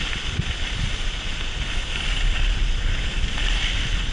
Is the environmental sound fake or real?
real